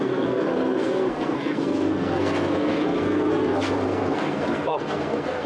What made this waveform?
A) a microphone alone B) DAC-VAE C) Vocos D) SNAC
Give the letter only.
D